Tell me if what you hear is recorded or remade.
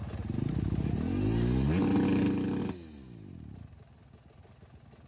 recorded